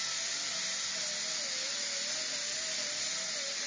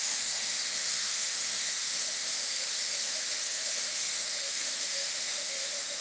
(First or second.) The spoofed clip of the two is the second